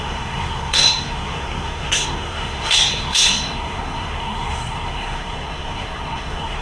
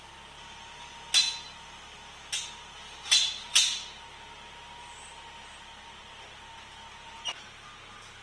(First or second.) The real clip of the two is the second